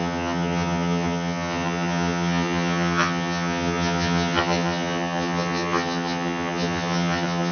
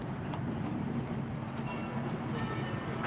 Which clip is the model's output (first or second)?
first